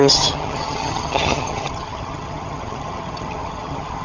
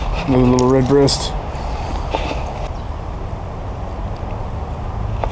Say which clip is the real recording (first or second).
second